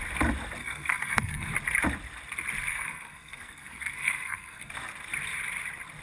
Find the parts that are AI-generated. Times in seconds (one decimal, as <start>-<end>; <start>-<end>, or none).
0.6-1.5; 2.7-4.7